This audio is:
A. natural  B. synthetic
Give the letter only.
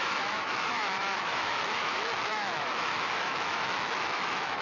B